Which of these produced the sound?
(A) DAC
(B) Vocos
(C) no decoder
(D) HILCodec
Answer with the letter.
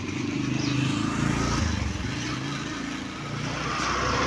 C